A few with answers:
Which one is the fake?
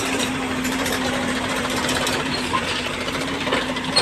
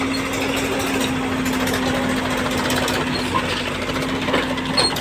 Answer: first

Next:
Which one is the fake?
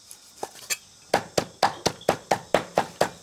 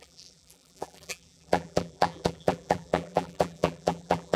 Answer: second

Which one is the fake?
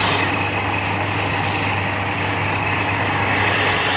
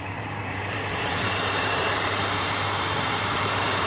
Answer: second